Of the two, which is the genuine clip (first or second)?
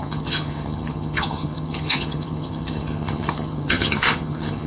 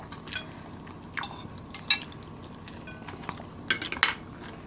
second